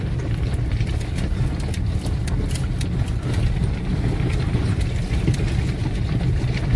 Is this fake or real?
real